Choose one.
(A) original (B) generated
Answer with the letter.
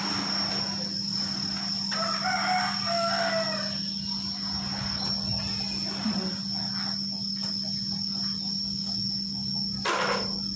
A